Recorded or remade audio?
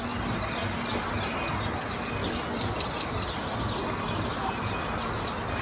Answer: recorded